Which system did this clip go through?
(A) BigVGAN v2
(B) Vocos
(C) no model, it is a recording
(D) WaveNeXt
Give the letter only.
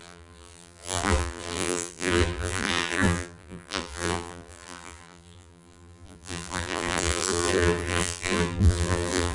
A